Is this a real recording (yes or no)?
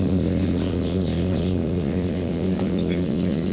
no